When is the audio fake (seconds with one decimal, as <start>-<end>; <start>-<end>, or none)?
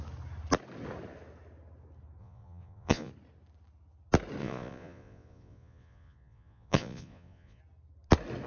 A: 2.2-3.1; 4.4-7.6